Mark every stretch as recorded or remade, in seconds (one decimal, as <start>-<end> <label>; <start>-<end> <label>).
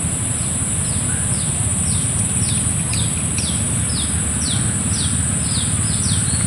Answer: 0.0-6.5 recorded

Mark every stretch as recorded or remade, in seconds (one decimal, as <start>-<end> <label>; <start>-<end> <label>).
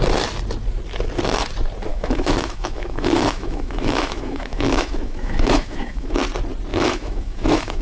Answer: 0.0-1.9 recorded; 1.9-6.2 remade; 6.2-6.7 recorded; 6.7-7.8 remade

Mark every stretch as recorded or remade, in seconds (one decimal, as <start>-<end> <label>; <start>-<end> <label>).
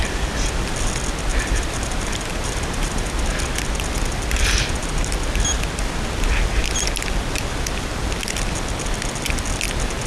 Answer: 0.0-1.3 recorded; 1.3-3.1 remade; 3.1-10.1 recorded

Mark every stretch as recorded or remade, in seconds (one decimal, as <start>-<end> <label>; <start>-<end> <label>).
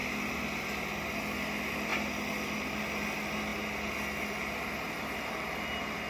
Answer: 0.0-1.9 recorded; 1.9-2.5 remade; 2.5-3.5 recorded; 3.5-5.6 remade; 5.6-6.1 recorded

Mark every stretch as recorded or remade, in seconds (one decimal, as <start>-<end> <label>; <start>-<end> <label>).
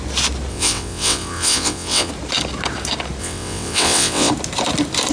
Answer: 0.0-0.5 recorded; 0.5-2.1 remade; 2.1-3.2 recorded; 3.2-4.3 remade; 4.3-5.1 recorded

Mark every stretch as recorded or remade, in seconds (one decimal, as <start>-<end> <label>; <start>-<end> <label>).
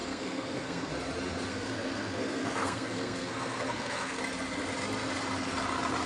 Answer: 0.0-0.9 remade; 0.9-1.5 recorded; 1.5-4.2 remade; 4.2-6.1 recorded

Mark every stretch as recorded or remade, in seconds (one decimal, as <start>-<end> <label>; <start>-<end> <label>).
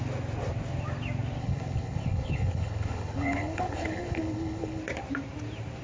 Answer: 0.0-1.4 recorded; 1.4-4.8 remade; 4.8-5.8 recorded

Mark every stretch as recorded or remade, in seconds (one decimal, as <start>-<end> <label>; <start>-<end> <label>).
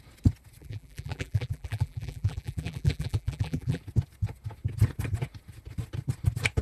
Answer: 0.0-0.6 recorded; 0.6-3.8 remade; 3.8-6.6 recorded